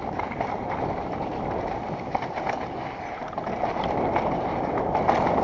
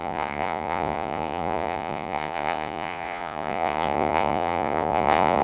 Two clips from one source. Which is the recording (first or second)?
first